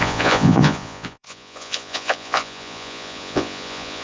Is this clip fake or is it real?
fake